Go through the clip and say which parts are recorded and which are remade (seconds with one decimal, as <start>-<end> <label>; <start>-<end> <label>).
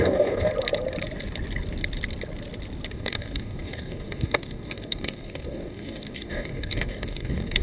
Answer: 0.0-0.5 remade; 0.5-2.9 recorded; 2.9-7.6 remade